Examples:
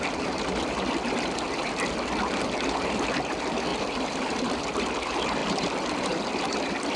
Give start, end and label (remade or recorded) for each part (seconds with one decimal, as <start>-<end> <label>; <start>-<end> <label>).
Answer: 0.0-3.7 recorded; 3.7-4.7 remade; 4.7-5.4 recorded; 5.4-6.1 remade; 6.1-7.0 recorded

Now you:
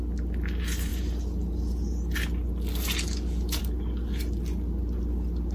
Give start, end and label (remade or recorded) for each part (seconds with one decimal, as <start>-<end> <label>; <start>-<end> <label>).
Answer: 0.0-5.5 recorded

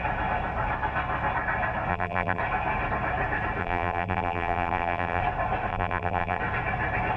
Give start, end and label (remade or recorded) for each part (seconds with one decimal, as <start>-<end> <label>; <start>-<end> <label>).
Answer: 0.0-1.9 recorded; 1.9-2.4 remade; 2.4-3.6 recorded; 3.6-5.2 remade; 5.2-5.7 recorded; 5.7-6.4 remade; 6.4-7.2 recorded

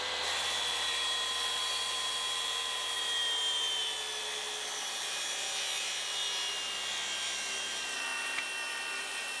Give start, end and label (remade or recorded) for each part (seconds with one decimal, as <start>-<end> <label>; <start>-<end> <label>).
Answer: 0.0-3.2 remade; 3.2-4.8 recorded; 4.8-8.1 remade; 8.1-9.0 recorded; 9.0-9.4 remade

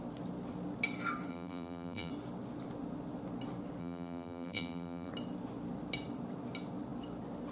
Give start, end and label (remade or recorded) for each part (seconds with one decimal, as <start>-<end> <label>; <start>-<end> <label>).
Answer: 0.0-1.3 recorded; 1.3-2.1 remade; 2.1-3.8 recorded; 3.8-5.1 remade; 5.1-7.5 recorded